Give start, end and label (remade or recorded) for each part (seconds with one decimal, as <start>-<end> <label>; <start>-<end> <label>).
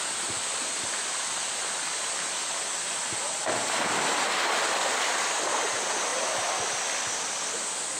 0.0-8.0 recorded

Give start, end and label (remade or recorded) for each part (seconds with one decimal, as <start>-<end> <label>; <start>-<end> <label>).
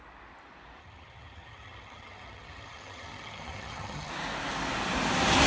0.0-0.8 recorded; 0.8-4.1 remade; 4.1-5.5 recorded